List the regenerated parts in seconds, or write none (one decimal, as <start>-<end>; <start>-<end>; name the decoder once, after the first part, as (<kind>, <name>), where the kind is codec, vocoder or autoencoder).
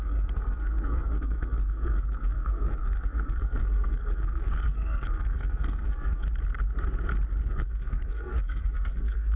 0.0-6.2 (codec, SNAC); 7.5-9.4